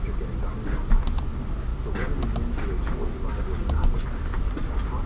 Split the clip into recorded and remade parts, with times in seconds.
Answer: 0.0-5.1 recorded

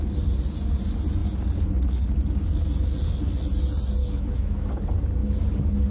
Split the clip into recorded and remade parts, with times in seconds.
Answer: 0.0-4.0 recorded; 4.0-4.7 remade; 4.7-5.9 recorded